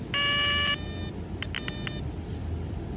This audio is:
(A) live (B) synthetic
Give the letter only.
A